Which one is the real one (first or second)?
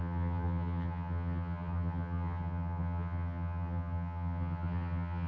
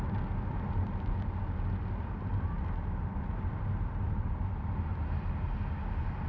second